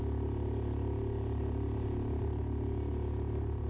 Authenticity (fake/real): real